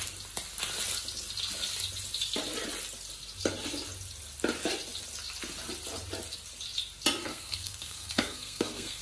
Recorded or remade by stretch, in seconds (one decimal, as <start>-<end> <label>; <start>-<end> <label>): 0.0-7.3 recorded; 7.3-9.0 remade